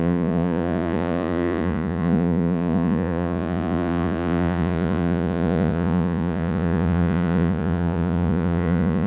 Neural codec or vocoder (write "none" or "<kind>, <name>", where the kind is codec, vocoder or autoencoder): vocoder, Vocos